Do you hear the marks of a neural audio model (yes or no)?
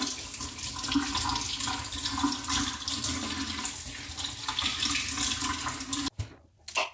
no